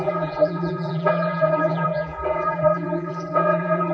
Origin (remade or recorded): remade